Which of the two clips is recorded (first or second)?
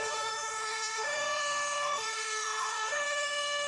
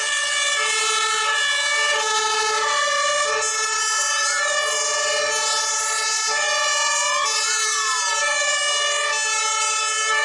second